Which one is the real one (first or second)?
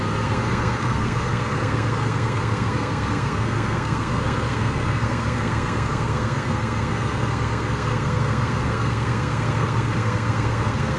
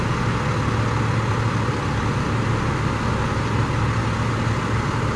second